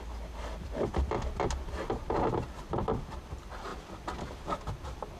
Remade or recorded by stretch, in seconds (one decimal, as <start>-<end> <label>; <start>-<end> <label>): 0.0-5.2 recorded